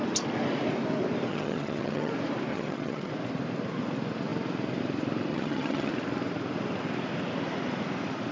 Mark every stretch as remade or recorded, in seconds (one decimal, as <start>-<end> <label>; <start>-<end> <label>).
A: 0.0-1.3 recorded; 1.3-2.1 remade; 2.1-2.5 recorded; 2.5-3.1 remade; 3.1-5.3 recorded; 5.3-5.9 remade; 5.9-8.3 recorded